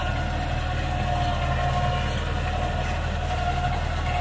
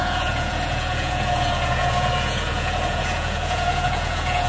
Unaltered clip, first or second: first